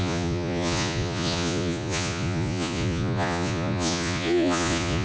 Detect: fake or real fake